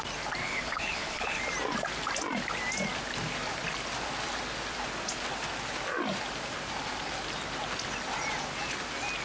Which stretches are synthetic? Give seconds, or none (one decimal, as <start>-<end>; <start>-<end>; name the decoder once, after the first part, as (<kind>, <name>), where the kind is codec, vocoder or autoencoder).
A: 0.4-1.4 (codec, HILCodec)